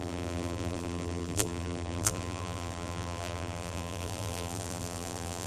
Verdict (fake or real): fake